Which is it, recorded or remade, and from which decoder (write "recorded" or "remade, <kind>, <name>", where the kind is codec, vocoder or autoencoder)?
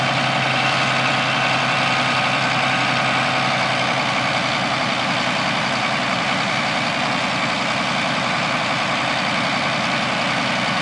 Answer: recorded